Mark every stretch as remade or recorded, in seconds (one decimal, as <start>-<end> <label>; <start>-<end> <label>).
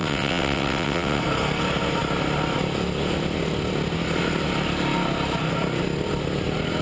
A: 0.0-1.2 remade; 1.2-6.8 recorded